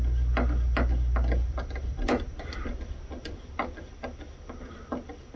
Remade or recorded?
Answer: recorded